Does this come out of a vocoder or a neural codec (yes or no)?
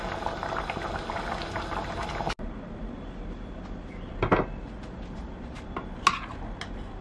no